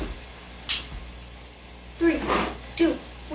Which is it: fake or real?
real